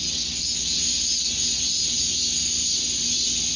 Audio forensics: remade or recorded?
recorded